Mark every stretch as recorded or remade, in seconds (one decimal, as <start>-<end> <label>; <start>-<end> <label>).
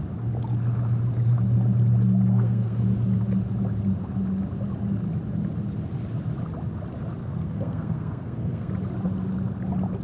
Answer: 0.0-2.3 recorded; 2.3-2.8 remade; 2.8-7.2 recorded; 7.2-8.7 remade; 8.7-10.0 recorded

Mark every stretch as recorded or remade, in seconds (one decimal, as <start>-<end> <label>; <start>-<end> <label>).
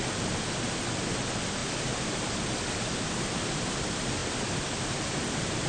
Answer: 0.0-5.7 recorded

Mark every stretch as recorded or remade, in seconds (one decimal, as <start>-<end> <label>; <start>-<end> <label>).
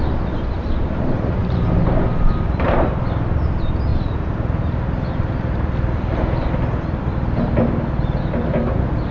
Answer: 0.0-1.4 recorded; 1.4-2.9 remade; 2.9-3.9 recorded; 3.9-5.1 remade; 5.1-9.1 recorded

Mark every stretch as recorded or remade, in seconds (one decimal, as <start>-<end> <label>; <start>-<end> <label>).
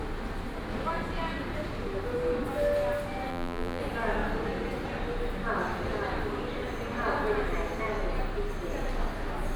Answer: 0.0-3.3 recorded; 3.3-3.8 remade; 3.8-9.6 recorded